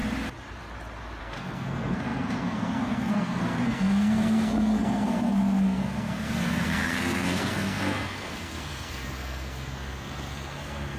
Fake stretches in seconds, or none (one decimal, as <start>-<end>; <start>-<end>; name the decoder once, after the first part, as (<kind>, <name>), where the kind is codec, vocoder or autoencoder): 1.2-11.0 (codec, SNAC)